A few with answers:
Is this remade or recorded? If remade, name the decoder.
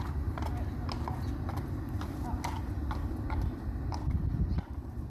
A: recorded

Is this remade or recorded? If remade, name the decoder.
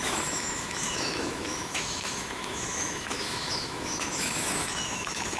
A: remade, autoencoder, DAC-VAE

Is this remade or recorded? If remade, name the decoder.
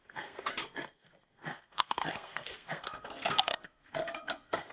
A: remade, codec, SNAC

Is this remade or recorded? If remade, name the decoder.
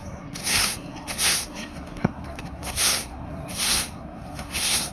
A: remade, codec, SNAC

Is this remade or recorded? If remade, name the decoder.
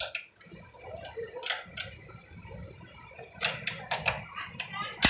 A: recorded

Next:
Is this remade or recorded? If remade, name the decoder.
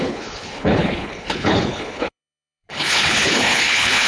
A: remade, codec, HILCodec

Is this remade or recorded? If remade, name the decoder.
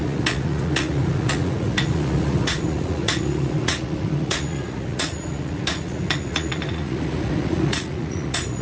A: remade, vocoder, Vocos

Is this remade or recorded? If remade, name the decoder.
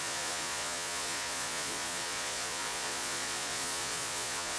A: remade, vocoder, Vocos